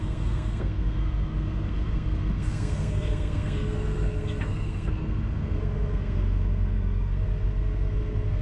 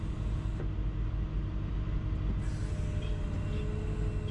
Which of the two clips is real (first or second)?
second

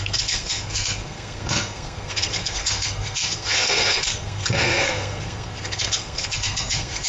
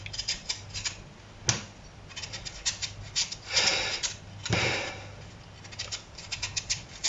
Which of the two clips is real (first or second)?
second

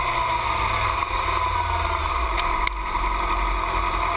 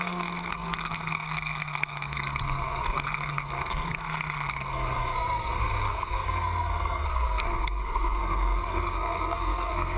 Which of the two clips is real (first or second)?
first